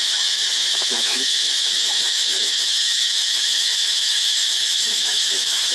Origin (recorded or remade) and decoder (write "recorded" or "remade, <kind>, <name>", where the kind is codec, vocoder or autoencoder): remade, autoencoder, DAC-VAE